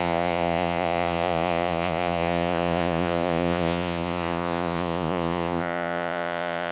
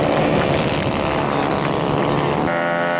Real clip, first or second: second